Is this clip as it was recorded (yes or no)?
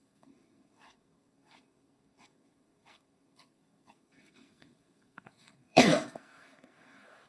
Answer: no